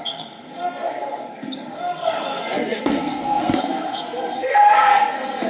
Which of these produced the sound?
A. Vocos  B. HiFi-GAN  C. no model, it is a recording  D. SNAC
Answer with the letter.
D